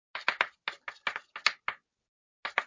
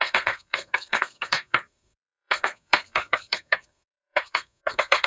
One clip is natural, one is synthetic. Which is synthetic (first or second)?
second